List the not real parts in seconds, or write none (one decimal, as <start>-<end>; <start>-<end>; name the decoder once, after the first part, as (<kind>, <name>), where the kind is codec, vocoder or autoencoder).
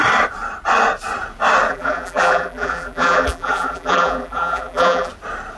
1.7-5.1 (vocoder, BigVGAN v2)